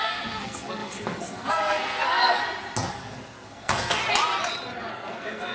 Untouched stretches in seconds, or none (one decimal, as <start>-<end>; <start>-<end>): 2.4-2.9; 4.0-4.9

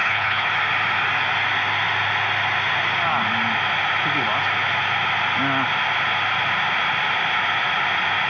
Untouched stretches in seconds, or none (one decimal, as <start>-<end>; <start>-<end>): 0.5-8.3

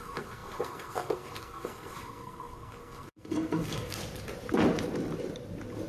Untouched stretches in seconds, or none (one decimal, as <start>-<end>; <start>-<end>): 4.0-5.9

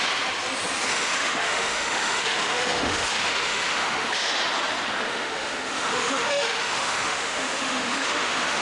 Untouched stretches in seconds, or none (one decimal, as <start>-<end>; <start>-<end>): 0.0-0.9; 4.3-5.1

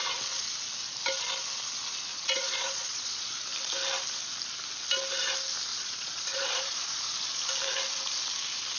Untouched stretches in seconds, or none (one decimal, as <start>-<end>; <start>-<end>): 0.0-2.1; 3.4-5.7; 7.0-8.8

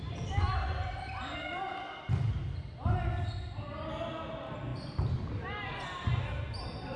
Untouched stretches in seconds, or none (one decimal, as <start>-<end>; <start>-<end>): 0.0-7.0

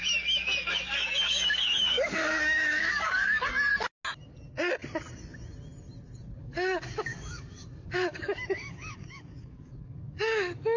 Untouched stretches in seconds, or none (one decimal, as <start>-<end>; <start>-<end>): 3.7-6.4

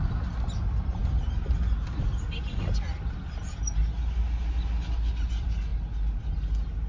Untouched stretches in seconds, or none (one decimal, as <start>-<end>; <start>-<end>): 0.0-6.9